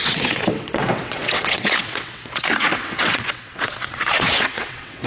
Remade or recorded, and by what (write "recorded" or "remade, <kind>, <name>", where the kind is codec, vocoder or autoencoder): remade, vocoder, WaveNeXt